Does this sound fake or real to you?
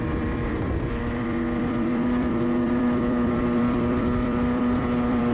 fake